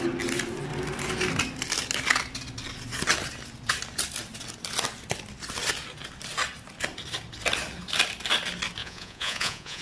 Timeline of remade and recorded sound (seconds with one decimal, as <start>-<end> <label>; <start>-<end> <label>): 0.0-8.8 recorded; 8.8-9.8 remade